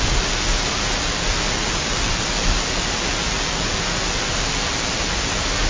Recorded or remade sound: recorded